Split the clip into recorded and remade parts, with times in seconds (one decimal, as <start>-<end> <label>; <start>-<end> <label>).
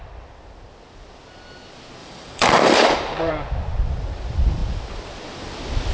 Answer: 0.0-2.0 recorded; 2.0-3.3 remade; 3.3-5.9 recorded